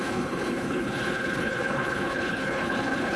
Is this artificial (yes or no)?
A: yes